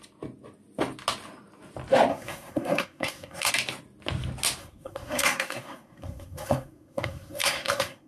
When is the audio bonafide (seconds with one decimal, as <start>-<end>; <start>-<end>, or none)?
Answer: 0.0-2.1; 3.5-4.6